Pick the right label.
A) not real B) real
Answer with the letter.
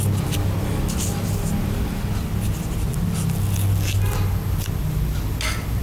B